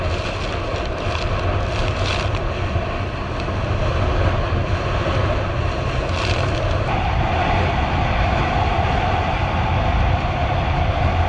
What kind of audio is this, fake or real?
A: real